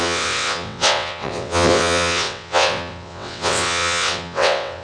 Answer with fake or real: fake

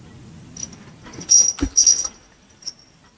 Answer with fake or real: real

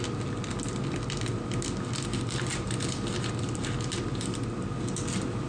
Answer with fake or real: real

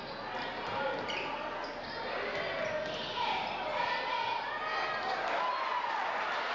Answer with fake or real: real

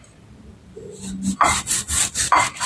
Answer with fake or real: real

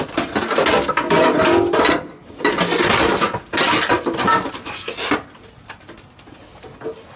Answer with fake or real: real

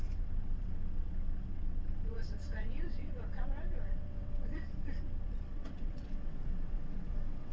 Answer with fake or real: fake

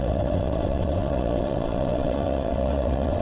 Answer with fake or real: fake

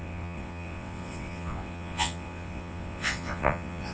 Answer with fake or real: fake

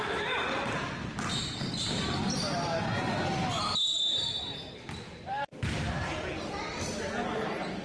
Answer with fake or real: real